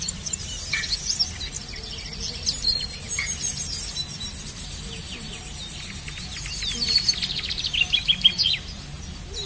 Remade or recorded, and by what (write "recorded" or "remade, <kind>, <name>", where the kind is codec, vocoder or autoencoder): recorded